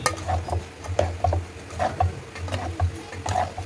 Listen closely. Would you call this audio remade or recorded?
recorded